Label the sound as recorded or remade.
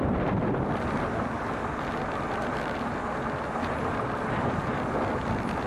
recorded